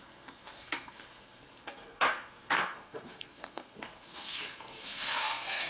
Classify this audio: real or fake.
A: fake